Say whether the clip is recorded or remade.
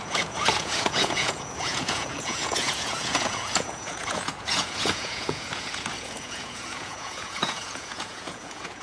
remade